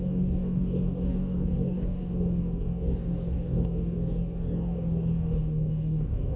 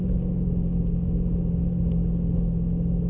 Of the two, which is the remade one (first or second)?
first